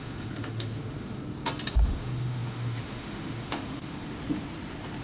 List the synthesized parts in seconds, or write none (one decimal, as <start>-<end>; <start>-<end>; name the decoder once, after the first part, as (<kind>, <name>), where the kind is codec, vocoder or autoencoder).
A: 0.0-1.2 (autoencoder, DAC-VAE); 1.7-4.1